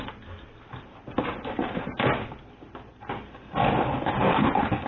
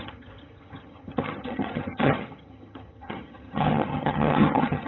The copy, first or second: second